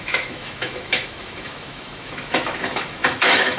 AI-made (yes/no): yes